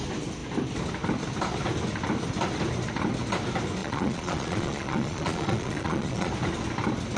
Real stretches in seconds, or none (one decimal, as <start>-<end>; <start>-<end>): 0.0-3.8; 6.3-7.2